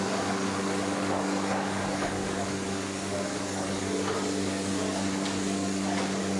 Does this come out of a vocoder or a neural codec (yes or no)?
yes